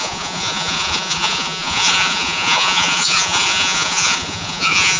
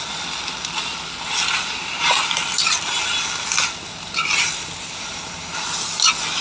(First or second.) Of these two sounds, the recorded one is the second